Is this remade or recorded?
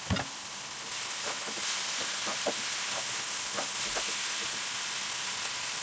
recorded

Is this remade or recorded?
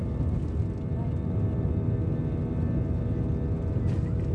recorded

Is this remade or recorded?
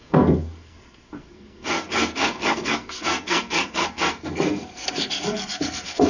remade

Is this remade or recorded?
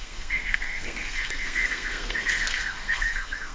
remade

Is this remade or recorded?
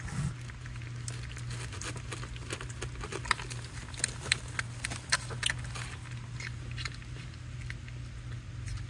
recorded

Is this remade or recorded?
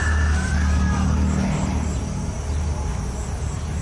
recorded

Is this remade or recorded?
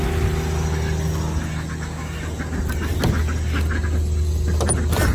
recorded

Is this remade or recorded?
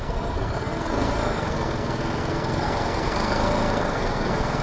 remade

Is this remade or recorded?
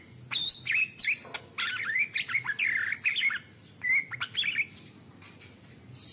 recorded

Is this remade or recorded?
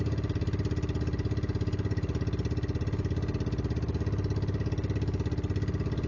recorded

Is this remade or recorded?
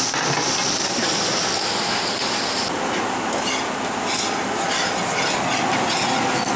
recorded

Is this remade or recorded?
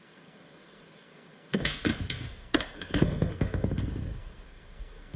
remade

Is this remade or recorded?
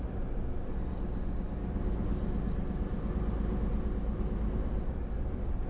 recorded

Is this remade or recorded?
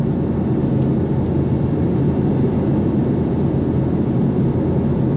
recorded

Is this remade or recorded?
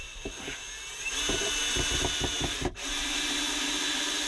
recorded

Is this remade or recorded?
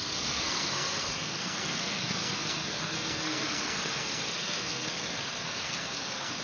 remade